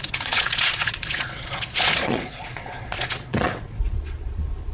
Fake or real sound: fake